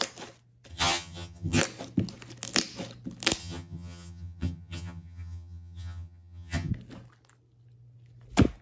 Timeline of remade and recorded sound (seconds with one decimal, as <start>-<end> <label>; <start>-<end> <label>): 0.0-0.7 recorded; 0.7-1.6 remade; 1.6-3.4 recorded; 3.4-6.7 remade; 6.7-8.6 recorded